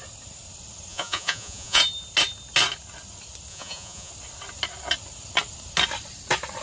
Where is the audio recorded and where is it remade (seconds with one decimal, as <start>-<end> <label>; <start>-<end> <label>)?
0.0-0.9 recorded; 0.9-1.8 remade; 1.8-3.5 recorded; 3.5-4.1 remade; 4.1-6.6 recorded

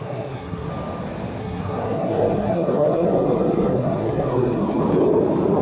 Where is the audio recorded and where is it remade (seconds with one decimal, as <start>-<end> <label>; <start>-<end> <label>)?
0.0-0.7 remade; 0.7-1.4 recorded; 1.4-4.8 remade; 4.8-5.6 recorded

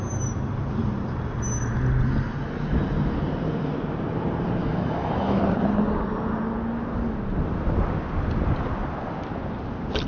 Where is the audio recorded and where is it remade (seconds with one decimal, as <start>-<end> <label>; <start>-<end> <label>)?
0.0-4.6 recorded; 4.6-5.4 remade; 5.4-10.1 recorded

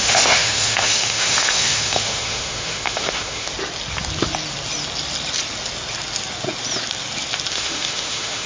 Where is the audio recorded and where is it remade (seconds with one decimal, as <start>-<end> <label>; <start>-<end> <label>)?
0.0-3.5 remade; 3.5-7.5 recorded; 7.5-8.5 remade

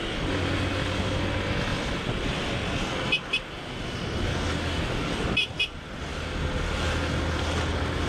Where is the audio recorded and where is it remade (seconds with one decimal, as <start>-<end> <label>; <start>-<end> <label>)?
0.0-8.1 recorded

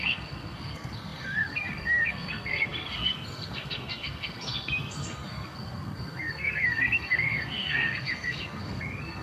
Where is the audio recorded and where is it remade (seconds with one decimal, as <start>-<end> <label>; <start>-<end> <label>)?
0.0-9.2 remade

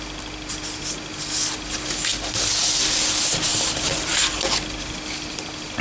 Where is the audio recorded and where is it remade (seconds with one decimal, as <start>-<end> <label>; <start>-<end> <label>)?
0.0-3.5 recorded; 3.5-4.3 remade; 4.3-5.8 recorded

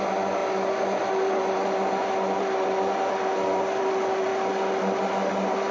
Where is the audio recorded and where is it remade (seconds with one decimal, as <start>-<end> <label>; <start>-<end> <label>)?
0.0-5.7 recorded